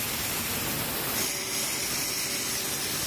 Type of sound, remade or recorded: recorded